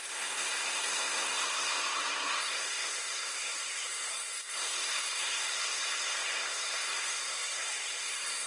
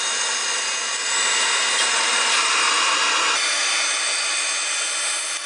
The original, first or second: second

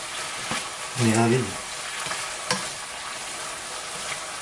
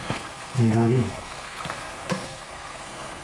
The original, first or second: first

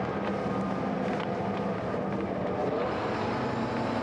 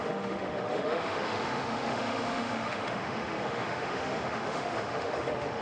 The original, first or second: first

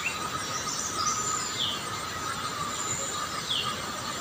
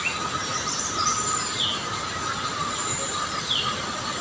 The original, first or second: first